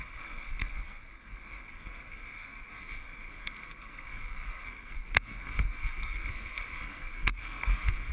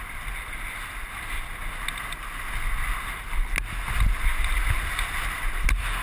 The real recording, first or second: second